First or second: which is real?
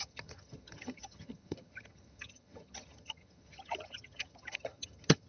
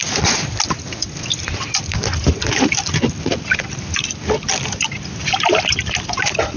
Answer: second